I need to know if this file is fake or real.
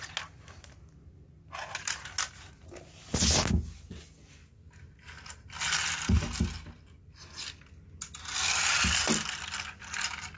real